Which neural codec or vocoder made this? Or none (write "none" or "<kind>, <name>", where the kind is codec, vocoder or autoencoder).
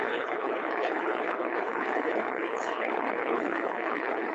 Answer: codec, HILCodec